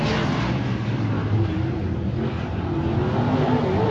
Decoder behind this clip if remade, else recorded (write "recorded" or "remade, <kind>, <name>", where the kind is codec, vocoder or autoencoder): recorded